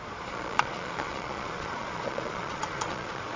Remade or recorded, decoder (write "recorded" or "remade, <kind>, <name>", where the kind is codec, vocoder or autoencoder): remade, vocoder, Vocos